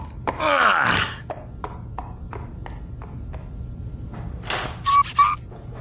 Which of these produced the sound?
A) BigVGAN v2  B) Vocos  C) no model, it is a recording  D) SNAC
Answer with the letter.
C